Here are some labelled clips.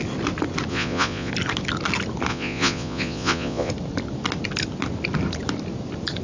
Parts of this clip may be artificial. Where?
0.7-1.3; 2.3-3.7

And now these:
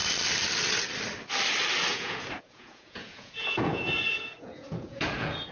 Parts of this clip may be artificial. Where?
1.9-5.5

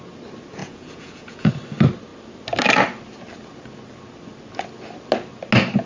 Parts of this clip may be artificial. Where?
0.6-1.5